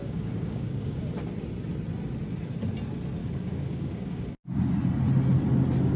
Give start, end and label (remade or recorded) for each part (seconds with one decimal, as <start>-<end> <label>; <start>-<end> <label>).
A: 0.0-1.0 remade; 1.0-3.2 recorded; 3.2-4.2 remade; 4.2-6.0 recorded

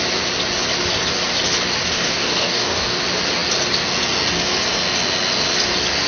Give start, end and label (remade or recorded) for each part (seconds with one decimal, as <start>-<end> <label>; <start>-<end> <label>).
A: 0.0-1.8 recorded; 1.8-3.0 remade; 3.0-6.1 recorded

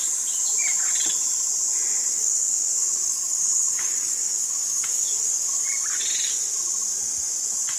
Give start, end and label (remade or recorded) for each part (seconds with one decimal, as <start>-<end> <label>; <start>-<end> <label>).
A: 0.0-2.0 recorded; 2.0-5.6 remade; 5.6-7.8 recorded

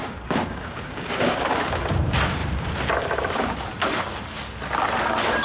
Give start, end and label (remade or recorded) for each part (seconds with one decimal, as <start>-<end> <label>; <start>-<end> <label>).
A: 0.0-1.8 remade; 1.8-5.4 recorded

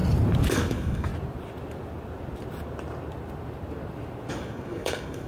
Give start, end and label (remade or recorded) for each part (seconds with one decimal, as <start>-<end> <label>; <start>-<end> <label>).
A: 0.0-0.5 recorded; 0.5-1.1 remade; 1.1-4.3 recorded; 4.3-5.3 remade

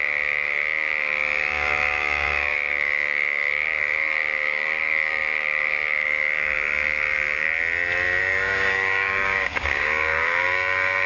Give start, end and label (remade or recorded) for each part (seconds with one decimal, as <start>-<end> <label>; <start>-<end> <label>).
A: 0.0-7.6 remade; 7.6-8.2 recorded; 8.2-11.1 remade

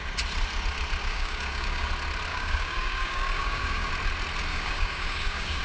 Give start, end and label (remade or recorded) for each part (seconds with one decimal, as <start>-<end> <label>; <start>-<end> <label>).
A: 0.0-1.0 recorded; 1.0-1.9 remade; 1.9-2.3 recorded; 2.3-3.9 remade; 3.9-4.5 recorded; 4.5-5.6 remade